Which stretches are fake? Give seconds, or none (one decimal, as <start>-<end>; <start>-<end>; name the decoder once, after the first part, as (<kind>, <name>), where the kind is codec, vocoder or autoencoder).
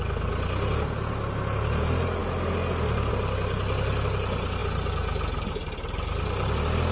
none